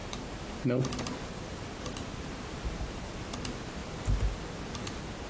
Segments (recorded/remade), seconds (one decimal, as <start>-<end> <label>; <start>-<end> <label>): 0.0-3.2 remade; 3.2-5.3 recorded